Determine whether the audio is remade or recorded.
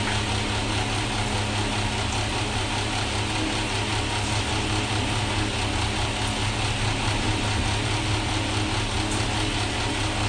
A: recorded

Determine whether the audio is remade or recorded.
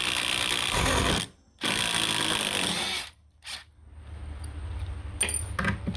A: recorded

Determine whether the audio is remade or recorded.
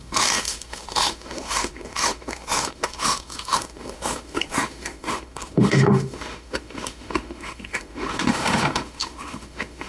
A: remade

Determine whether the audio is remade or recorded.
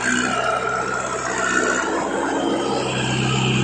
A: recorded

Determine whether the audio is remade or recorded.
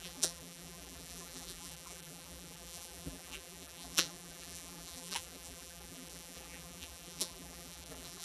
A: remade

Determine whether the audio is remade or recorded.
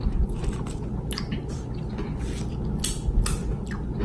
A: recorded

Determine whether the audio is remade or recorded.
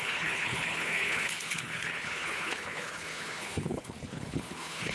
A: remade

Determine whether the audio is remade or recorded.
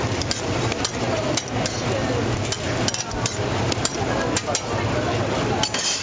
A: recorded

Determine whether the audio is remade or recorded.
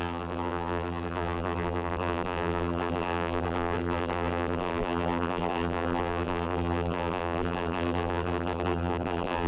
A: remade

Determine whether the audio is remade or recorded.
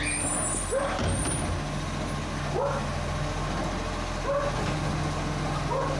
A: recorded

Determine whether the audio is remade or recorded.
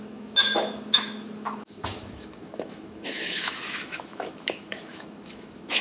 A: remade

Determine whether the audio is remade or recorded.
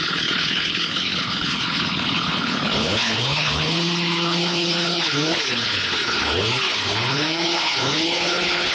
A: remade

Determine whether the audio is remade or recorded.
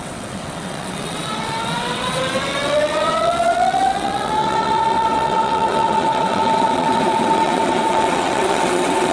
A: remade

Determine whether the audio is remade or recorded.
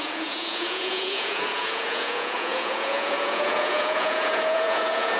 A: remade